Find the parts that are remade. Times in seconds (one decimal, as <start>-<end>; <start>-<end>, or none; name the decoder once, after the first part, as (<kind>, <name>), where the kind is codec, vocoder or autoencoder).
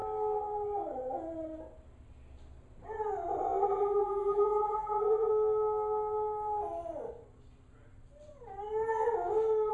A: 3.6-5.3 (vocoder, BigVGAN v2)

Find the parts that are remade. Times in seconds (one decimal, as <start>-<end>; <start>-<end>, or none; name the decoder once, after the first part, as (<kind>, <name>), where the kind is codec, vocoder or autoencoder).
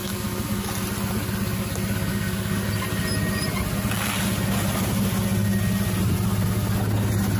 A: 0.0-0.7 (codec, DAC); 2.1-2.7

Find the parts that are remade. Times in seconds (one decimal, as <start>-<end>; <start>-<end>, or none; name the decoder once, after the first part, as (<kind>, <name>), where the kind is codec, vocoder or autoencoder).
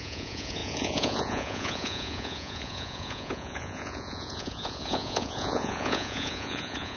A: 0.0-7.0 (vocoder, Vocos)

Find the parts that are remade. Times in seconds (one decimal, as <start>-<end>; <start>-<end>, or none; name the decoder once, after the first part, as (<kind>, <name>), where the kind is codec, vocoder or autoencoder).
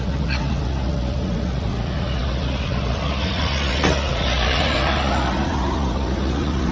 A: 0.0-6.7 (vocoder, Vocos)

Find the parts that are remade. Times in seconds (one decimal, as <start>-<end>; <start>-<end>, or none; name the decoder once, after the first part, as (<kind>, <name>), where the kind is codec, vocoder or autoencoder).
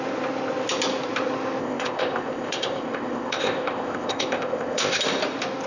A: 1.6-5.0 (codec, ZipCodec)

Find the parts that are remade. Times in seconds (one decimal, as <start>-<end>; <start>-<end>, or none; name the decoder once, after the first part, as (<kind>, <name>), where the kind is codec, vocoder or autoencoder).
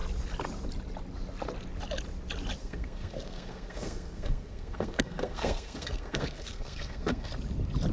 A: 2.6-7.3 (codec, SNAC)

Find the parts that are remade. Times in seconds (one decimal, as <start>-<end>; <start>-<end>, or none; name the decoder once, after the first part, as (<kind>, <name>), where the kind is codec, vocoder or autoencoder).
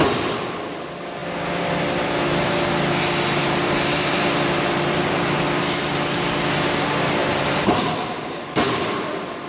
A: 3.4-5.1 (vocoder, BigVGAN v2); 7.2-8.4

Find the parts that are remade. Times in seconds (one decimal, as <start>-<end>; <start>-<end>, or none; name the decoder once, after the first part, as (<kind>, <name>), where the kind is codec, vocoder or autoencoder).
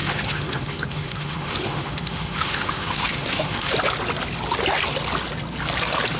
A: 0.0-3.7 (autoencoder, DAC-VAE)